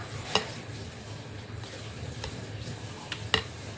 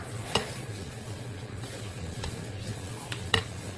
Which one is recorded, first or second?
first